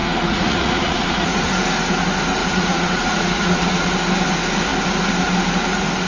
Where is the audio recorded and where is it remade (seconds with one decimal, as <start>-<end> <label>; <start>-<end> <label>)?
0.0-1.4 remade; 1.4-2.4 recorded; 2.4-3.9 remade; 3.9-6.1 recorded